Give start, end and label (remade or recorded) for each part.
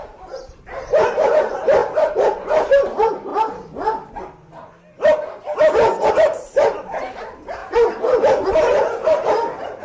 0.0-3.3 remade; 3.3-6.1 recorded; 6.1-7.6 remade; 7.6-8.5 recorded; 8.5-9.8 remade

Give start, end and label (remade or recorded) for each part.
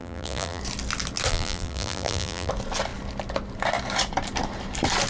0.0-0.6 remade; 0.6-1.3 recorded; 1.3-2.5 remade; 2.5-5.1 recorded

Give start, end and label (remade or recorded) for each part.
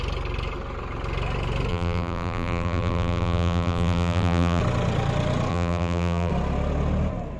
0.0-1.7 recorded; 1.7-4.6 remade; 4.6-5.5 recorded; 5.5-6.3 remade; 6.3-7.4 recorded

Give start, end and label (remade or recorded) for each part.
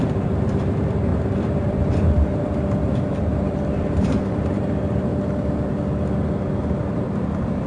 0.0-5.1 remade; 5.1-6.6 recorded; 6.6-7.7 remade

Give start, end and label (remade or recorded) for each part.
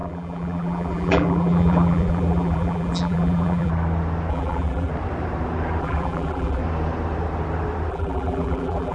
0.0-3.7 remade; 3.7-4.3 recorded; 4.3-4.9 remade; 4.9-5.8 recorded; 5.8-6.6 remade; 6.6-7.9 recorded; 7.9-8.9 remade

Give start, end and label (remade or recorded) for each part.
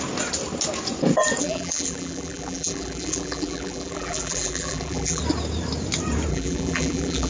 0.0-1.4 recorded; 1.4-5.2 remade; 5.2-6.3 recorded; 6.3-7.3 remade